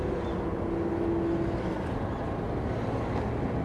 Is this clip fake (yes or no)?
no